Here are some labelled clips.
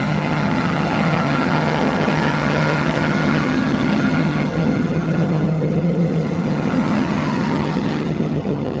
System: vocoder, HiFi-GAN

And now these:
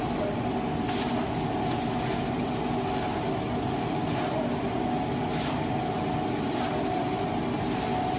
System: none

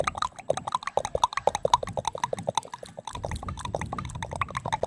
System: none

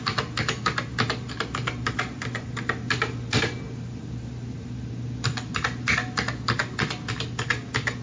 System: none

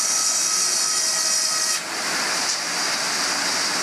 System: none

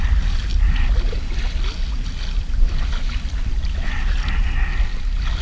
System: none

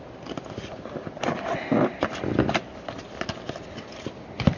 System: none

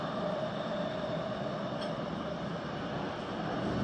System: none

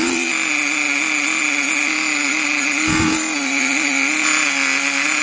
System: none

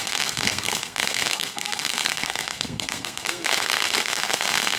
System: codec, SNAC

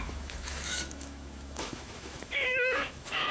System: autoencoder, DAC-VAE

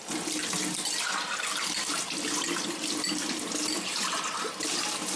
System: none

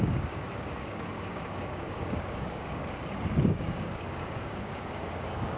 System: codec, DAC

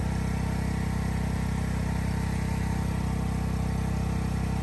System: none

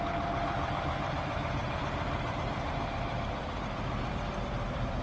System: vocoder, BigVGAN v2